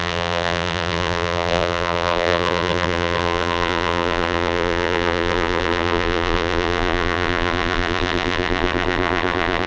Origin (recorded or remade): remade